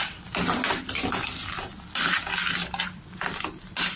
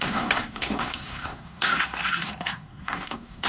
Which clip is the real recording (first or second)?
first